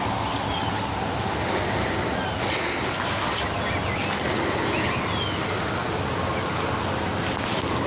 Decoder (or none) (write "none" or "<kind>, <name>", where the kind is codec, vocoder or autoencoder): none